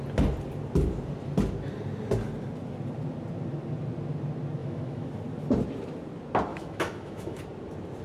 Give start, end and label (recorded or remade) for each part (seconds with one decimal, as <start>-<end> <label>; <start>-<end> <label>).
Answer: 0.0-4.6 recorded; 4.6-5.1 remade; 5.1-6.5 recorded; 6.5-7.4 remade; 7.4-8.0 recorded